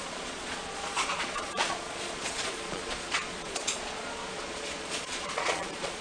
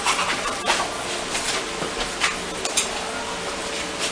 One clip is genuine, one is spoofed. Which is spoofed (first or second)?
first